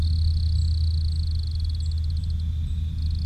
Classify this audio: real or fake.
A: real